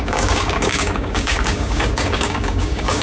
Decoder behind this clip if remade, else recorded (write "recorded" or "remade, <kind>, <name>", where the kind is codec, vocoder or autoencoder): remade, codec, DAC